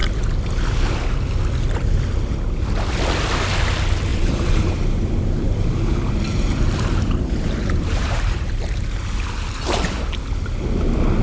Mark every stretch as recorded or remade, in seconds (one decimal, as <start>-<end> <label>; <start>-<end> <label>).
0.0-4.1 recorded; 4.1-9.0 remade; 9.0-11.2 recorded